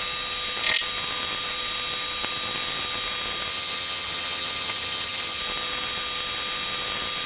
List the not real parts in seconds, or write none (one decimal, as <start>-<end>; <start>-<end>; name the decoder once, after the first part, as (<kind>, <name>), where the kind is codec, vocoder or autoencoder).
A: 3.5-5.4 (vocoder, HiFi-GAN)